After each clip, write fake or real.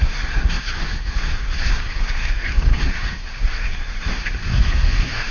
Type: fake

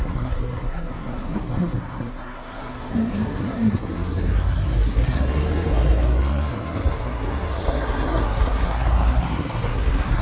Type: fake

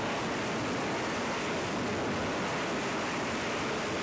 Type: real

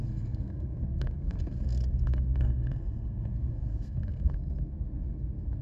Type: fake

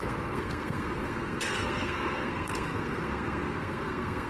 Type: fake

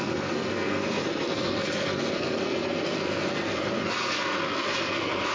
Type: fake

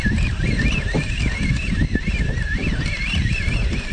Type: real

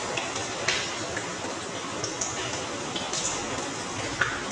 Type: real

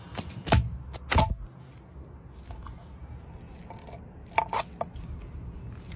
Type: real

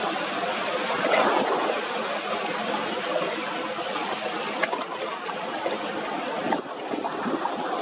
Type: real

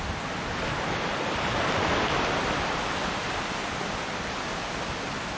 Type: real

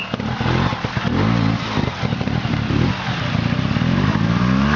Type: real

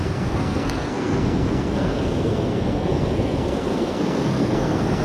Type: fake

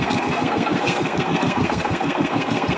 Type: fake